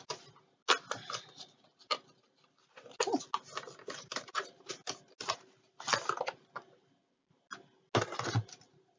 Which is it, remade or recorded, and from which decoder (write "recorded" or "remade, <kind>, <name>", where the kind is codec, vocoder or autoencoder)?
recorded